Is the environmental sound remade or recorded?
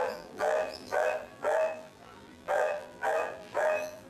remade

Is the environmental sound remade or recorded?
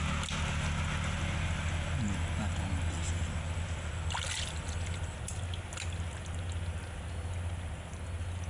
recorded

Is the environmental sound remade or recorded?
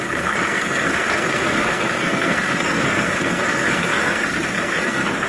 remade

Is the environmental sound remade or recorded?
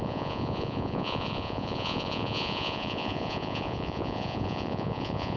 remade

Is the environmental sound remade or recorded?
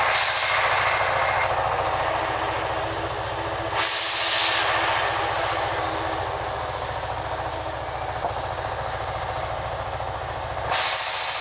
recorded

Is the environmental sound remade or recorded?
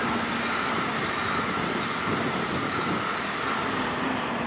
recorded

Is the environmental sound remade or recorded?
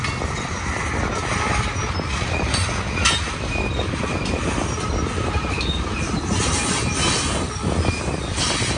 recorded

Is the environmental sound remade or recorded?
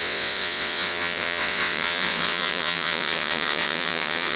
remade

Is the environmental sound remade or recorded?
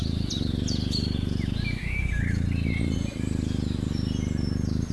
recorded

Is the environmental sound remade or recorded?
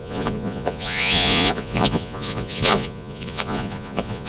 remade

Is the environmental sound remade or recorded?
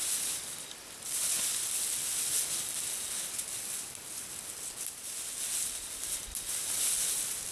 recorded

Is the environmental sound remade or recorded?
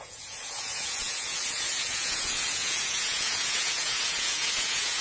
remade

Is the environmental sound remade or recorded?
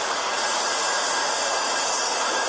remade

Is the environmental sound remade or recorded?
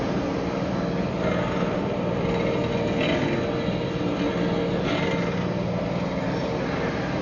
recorded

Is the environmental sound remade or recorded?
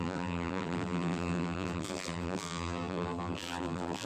remade